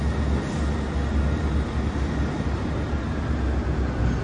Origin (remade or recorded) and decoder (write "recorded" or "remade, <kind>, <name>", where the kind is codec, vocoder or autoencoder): recorded